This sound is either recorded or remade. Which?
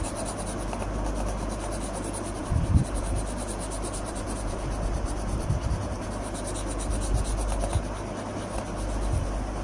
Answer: recorded